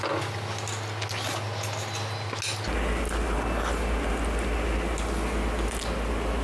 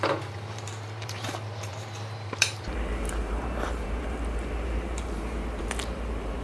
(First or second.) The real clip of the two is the first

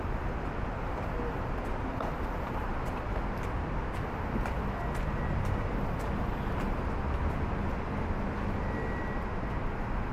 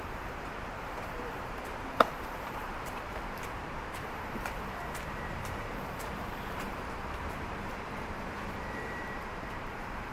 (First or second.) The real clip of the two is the first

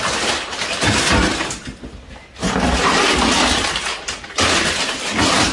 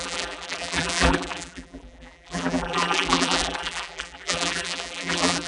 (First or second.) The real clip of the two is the first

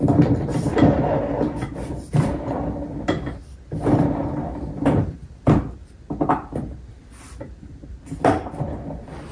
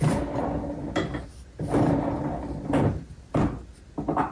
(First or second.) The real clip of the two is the second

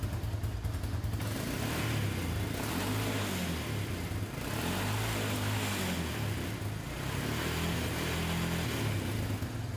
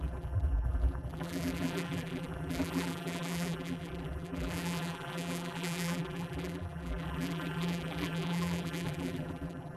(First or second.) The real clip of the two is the first